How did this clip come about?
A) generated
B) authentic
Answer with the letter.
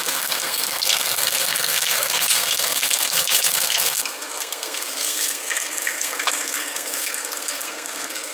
A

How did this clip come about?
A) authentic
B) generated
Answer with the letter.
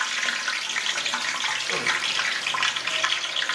A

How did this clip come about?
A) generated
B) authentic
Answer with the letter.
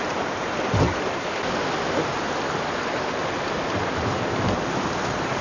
A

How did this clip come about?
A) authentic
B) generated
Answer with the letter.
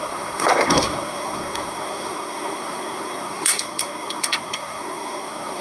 B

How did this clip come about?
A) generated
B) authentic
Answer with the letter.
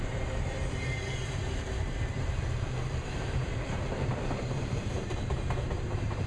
A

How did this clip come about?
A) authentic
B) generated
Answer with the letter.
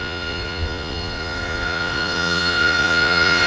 B